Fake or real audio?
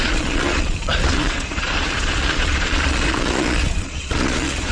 fake